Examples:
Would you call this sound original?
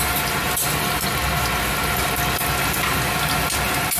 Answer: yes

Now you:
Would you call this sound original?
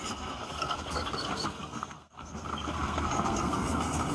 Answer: no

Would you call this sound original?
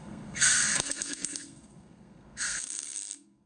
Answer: no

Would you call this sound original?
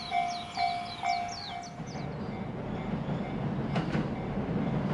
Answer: yes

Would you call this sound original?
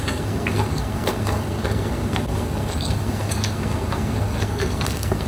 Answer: no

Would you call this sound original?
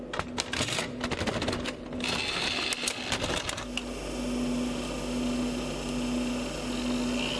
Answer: yes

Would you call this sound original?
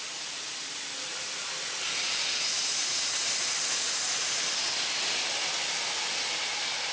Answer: yes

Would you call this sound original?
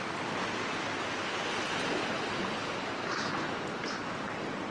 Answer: yes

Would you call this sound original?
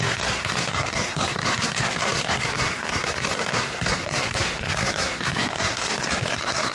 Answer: no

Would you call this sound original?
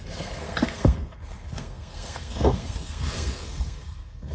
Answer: no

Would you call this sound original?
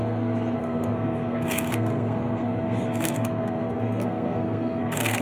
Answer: no